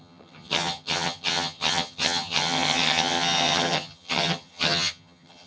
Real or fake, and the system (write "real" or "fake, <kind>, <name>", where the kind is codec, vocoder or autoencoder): fake, vocoder, HiFi-GAN